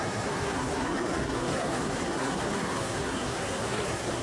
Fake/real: fake